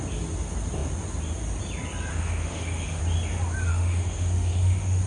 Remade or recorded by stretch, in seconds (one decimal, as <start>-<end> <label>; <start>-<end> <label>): 0.0-2.1 recorded; 2.1-3.0 remade; 3.0-3.7 recorded; 3.7-5.1 remade